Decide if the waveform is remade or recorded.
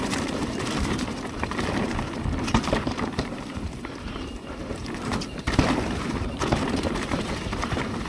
remade